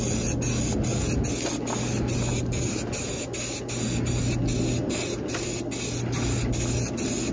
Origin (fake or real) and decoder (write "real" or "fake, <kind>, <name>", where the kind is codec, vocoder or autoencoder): real